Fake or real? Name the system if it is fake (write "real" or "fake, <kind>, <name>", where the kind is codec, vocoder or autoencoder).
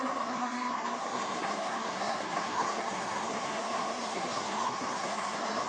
fake, codec, SNAC